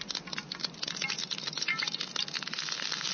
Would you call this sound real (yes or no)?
yes